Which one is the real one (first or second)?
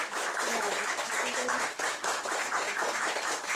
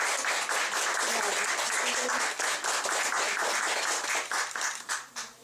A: second